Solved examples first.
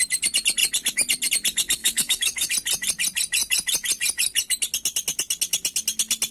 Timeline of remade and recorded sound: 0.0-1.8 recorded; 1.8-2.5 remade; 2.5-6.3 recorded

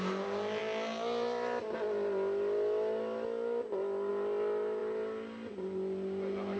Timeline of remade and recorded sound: 0.0-6.6 recorded

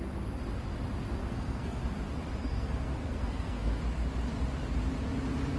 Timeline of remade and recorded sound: 0.0-1.2 recorded; 1.2-1.8 remade; 1.8-2.4 recorded; 2.4-3.8 remade; 3.8-5.6 recorded

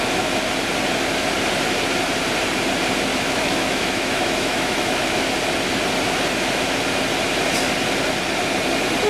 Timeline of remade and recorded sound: 0.0-3.1 recorded; 3.1-5.2 remade; 5.2-9.1 recorded

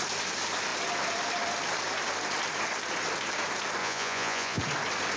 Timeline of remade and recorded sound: 0.0-3.8 recorded; 3.8-4.6 remade; 4.6-5.2 recorded

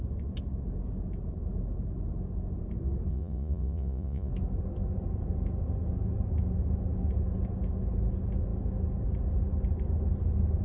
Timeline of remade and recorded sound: 0.0-3.1 recorded; 3.1-4.3 remade; 4.3-10.6 recorded

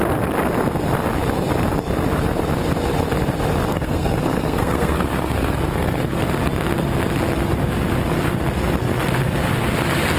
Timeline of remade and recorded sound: 0.0-3.7 recorded; 3.7-6.2 remade; 6.2-10.2 recorded